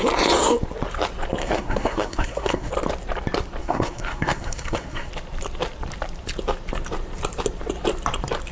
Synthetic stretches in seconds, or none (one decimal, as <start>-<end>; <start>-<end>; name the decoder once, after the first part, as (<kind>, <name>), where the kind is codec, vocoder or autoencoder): 1.4-2.7 (codec, SNAC); 3.6-5.1